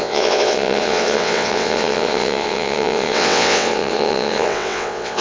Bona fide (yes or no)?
no